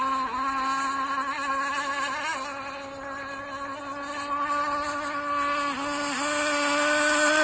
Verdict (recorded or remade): recorded